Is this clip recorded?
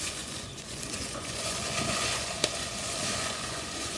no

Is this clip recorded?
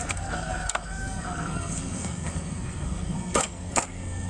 no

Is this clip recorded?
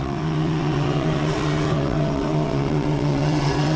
no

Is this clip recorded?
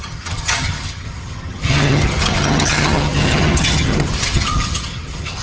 no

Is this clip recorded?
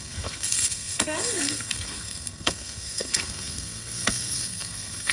no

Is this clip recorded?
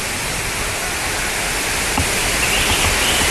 yes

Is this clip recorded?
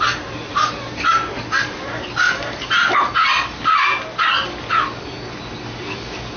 yes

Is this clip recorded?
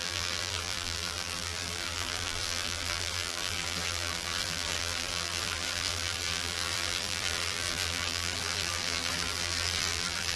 no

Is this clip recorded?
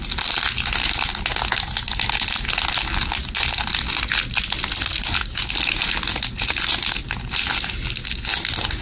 yes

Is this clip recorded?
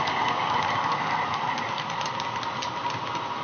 yes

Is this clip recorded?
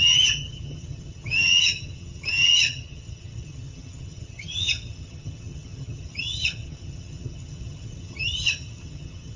no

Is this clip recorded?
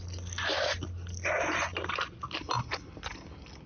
yes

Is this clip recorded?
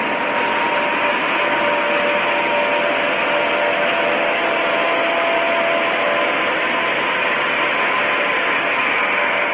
yes